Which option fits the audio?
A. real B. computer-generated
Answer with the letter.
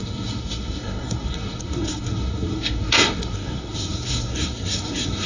B